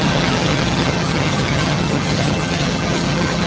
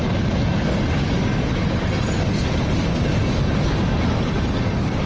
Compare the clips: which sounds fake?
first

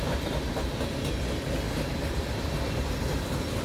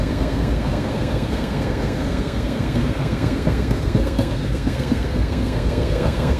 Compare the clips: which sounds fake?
second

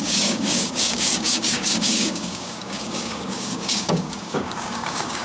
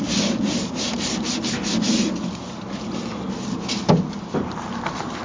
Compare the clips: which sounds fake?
first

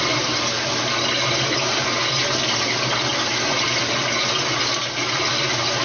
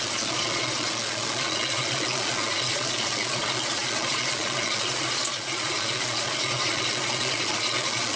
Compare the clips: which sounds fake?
second